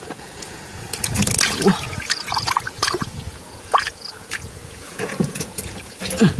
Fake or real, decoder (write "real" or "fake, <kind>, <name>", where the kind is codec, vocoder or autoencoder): fake, vocoder, Vocos